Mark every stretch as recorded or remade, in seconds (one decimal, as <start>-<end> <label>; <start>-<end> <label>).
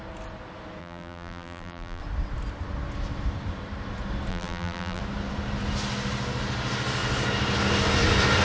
0.0-0.8 recorded; 0.8-2.0 remade; 2.0-4.3 recorded; 4.3-5.0 remade; 5.0-8.4 recorded